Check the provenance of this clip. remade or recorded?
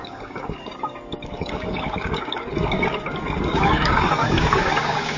remade